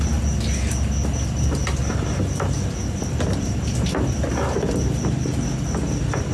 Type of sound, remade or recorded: recorded